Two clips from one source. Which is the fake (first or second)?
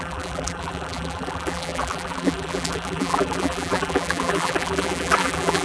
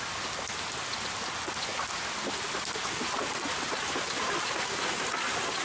first